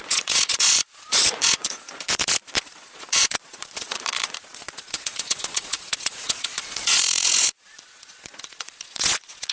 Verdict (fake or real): fake